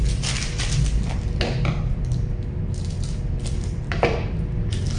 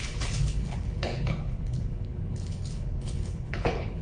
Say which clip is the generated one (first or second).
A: second